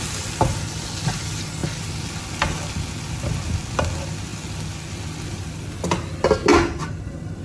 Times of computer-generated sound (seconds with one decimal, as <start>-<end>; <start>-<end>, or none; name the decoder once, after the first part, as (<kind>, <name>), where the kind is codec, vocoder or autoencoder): none